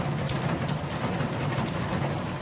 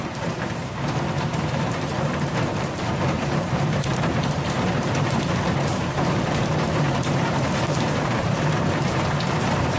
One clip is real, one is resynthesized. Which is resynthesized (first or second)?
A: second